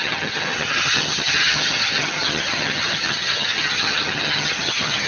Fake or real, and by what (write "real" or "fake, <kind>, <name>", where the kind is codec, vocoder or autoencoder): fake, vocoder, HiFi-GAN